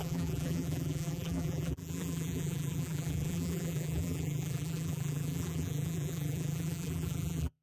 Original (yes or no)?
no